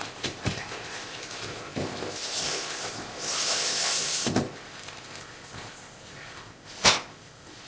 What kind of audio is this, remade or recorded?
remade